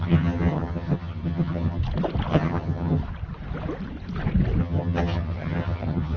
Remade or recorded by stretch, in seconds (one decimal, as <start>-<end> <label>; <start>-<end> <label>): 0.0-1.8 remade; 1.8-2.3 recorded; 2.3-3.0 remade; 3.0-4.6 recorded; 4.6-6.2 remade